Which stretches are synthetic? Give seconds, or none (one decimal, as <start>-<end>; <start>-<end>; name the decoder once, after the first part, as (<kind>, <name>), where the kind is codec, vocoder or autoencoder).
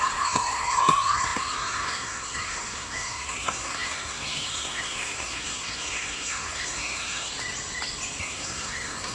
0.0-7.3 (codec, SNAC); 8.2-9.1